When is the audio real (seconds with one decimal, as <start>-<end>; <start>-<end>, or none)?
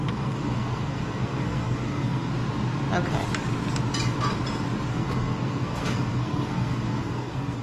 2.3-4.9